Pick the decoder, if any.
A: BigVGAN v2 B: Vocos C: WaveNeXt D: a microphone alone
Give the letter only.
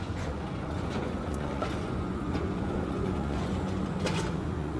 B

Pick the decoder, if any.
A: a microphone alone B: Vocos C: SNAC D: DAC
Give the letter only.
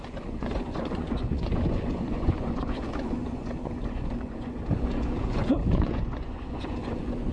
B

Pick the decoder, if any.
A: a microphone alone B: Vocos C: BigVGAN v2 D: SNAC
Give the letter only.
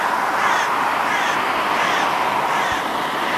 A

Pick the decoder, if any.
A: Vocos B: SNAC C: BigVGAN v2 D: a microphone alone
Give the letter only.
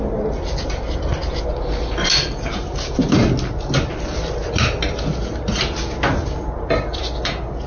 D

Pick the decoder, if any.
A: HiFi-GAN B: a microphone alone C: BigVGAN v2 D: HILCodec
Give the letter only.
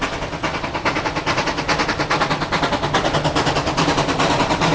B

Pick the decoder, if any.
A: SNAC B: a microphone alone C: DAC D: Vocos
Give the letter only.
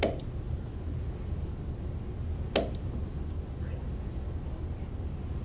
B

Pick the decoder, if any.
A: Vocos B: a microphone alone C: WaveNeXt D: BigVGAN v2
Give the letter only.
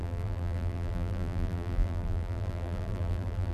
D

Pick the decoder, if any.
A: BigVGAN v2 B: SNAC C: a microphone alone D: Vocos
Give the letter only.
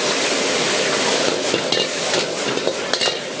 C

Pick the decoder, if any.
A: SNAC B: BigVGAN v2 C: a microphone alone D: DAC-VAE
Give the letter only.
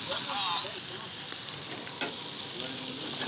C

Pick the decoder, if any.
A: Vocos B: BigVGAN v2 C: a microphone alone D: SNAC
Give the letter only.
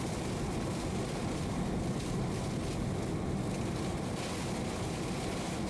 C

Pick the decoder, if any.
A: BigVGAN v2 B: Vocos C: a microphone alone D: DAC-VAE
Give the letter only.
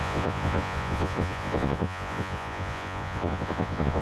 B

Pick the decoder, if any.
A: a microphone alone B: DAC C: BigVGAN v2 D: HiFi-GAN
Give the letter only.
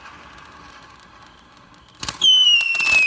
A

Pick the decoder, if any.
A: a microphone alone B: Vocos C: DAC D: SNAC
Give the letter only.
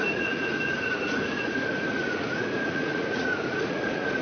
B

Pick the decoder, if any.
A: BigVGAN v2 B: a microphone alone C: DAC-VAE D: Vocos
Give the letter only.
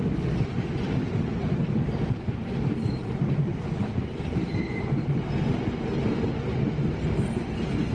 B